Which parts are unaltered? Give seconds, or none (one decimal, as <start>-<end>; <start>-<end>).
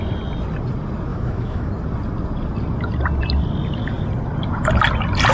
0.0-1.1; 1.7-5.3